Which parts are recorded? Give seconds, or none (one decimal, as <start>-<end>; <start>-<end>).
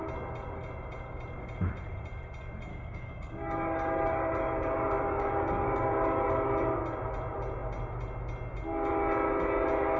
0.0-2.7; 6.3-10.0